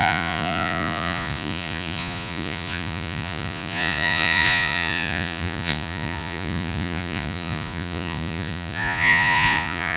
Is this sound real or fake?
fake